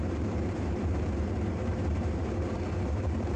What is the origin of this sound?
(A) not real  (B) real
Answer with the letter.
A